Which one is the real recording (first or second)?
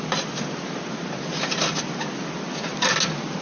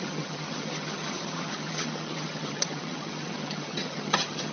first